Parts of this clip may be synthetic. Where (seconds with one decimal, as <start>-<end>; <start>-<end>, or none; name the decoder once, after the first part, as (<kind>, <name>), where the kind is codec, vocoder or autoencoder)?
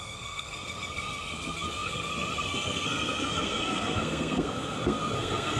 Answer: 0.0-5.6 (codec, SNAC)